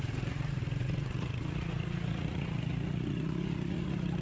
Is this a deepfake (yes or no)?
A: yes